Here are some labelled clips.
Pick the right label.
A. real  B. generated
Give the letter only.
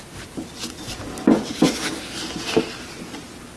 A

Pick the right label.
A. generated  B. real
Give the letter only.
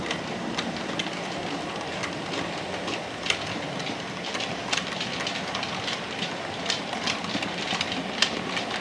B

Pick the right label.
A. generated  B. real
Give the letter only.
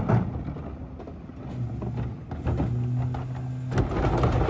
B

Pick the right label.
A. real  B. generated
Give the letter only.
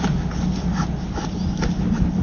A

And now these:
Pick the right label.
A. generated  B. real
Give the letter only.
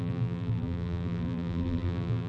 A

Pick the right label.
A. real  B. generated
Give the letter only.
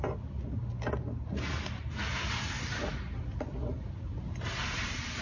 A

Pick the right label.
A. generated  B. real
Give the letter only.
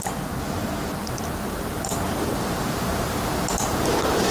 B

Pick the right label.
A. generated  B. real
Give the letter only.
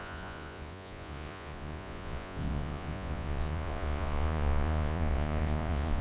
A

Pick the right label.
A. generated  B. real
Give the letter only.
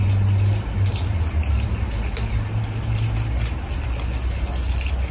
B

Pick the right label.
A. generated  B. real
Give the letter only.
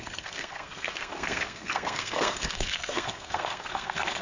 A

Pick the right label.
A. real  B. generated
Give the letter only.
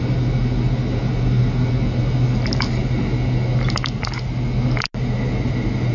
A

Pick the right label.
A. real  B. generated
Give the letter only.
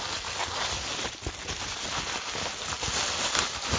A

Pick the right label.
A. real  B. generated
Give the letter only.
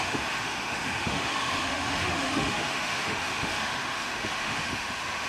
B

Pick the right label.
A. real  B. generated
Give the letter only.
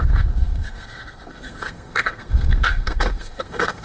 B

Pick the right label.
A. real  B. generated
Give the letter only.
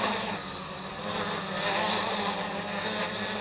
A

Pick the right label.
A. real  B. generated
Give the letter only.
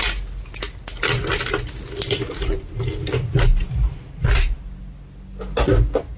A